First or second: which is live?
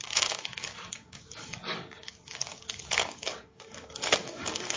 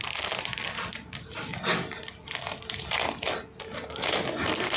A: second